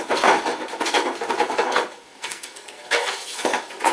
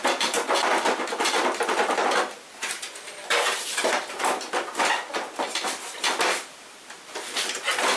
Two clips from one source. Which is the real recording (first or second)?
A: second